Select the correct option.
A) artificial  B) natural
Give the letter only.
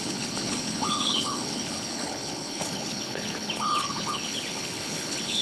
A